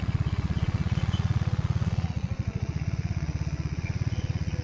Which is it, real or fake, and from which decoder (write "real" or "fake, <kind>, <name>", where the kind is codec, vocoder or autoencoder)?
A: fake, vocoder, Vocos